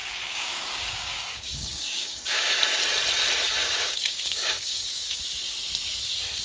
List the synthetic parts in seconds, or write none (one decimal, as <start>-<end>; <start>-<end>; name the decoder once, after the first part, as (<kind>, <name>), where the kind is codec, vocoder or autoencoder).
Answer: 0.0-2.5 (codec, DAC); 3.6-5.2